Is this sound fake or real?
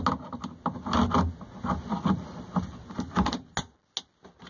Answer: real